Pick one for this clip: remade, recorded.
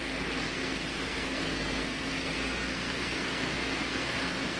remade